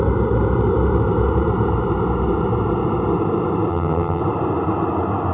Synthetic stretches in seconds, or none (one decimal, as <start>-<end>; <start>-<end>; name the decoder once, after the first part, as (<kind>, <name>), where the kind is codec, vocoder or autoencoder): 3.7-4.2 (vocoder, HiFi-GAN)